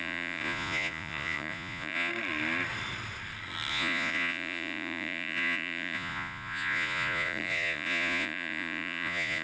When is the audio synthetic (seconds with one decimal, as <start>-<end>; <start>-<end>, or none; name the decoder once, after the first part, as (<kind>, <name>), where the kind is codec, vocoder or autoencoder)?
0.0-2.1 (vocoder, Vocos); 3.7-9.4